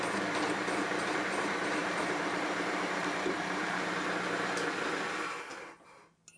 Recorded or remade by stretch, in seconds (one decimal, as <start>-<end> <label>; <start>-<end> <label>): 0.0-1.8 recorded; 1.8-3.9 remade; 3.9-6.4 recorded